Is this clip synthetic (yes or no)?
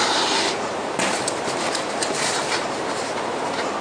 yes